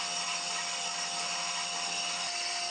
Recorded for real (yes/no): yes